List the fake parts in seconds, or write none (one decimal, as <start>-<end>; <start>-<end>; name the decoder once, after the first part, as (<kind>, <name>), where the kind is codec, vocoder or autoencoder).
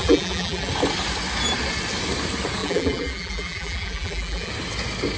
0.0-0.7 (vocoder, BigVGAN v2); 2.6-4.5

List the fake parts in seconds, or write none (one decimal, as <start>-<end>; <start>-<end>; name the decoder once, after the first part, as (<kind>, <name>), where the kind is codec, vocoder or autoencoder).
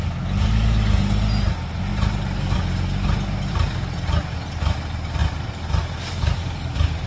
none